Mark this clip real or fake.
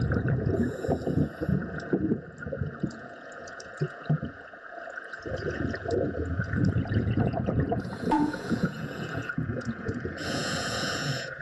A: fake